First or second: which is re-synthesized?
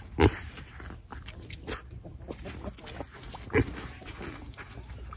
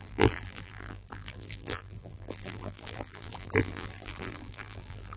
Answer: second